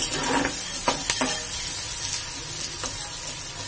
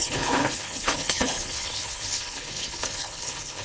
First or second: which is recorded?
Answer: first